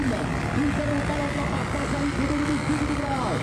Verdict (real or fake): real